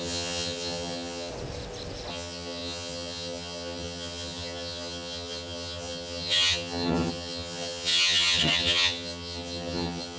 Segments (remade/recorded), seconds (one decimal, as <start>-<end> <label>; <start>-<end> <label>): 0.0-1.3 remade; 1.3-2.1 recorded; 2.1-10.2 remade